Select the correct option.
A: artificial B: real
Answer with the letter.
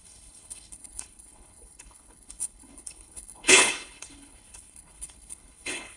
A